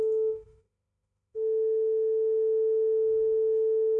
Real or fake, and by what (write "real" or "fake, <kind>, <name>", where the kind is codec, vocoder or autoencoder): fake, autoencoder, DAC-VAE